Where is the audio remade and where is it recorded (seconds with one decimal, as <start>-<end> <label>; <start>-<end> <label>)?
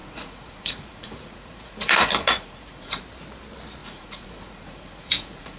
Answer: 0.0-3.0 remade; 3.0-3.8 recorded; 3.8-5.6 remade